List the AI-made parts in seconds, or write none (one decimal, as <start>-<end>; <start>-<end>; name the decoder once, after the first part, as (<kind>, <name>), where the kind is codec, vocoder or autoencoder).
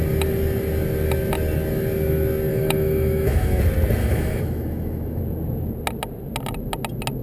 2.5-3.6 (autoencoder, DAC-VAE); 4.0-5.2